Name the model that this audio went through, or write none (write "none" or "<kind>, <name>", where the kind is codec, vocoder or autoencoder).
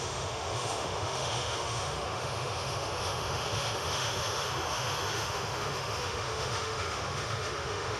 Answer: autoencoder, DAC-VAE